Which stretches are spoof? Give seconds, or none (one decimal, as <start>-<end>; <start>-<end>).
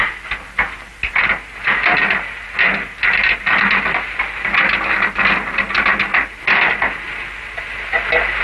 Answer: none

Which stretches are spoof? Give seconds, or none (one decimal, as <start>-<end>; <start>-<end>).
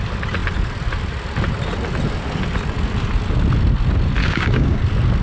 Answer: 4.2-4.8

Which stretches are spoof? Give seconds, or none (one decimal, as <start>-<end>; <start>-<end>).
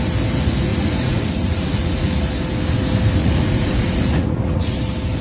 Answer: 0.7-2.1; 3.2-4.8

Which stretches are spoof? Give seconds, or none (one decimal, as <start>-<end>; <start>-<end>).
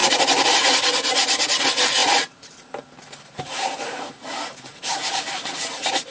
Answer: 2.0-5.2